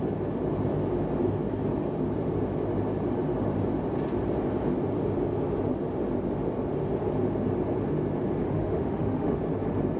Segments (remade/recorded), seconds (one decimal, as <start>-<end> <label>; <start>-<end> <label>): 0.0-8.4 recorded; 8.4-9.4 remade; 9.4-10.0 recorded